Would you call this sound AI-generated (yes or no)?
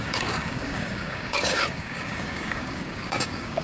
yes